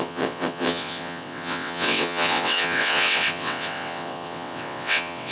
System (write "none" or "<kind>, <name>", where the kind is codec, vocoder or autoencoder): vocoder, WaveNeXt